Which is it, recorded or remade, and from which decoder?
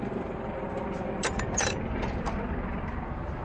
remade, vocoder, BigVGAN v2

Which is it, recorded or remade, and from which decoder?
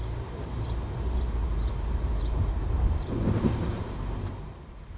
remade, vocoder, BigVGAN v2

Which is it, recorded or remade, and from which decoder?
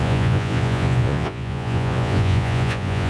remade, vocoder, Vocos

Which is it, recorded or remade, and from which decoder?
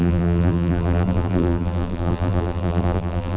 remade, vocoder, BigVGAN v2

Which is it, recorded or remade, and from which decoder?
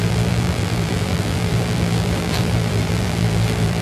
remade, vocoder, BigVGAN v2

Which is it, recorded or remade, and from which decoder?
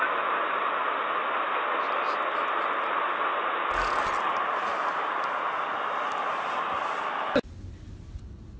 recorded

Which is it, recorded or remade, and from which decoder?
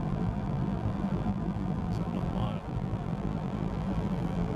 remade, vocoder, BigVGAN v2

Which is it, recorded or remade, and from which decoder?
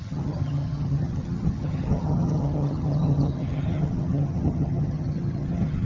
remade, vocoder, HiFi-GAN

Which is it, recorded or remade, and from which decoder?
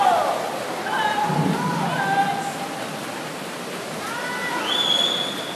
recorded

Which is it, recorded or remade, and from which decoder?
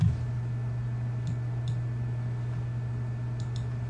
recorded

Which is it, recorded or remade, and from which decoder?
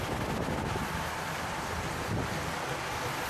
recorded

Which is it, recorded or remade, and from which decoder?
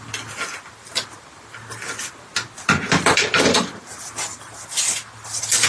recorded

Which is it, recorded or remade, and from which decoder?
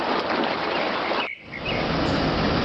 recorded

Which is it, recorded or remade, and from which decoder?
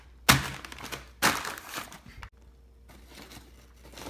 recorded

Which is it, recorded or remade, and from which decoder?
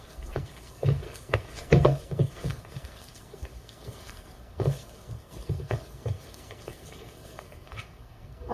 remade, codec, SNAC